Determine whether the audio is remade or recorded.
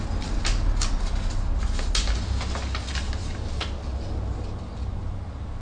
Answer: recorded